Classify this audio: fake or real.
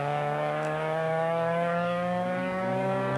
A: fake